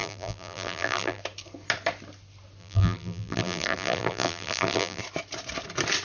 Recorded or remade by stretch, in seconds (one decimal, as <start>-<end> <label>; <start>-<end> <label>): 0.0-1.2 remade; 1.2-2.6 recorded; 2.6-5.0 remade; 5.0-6.0 recorded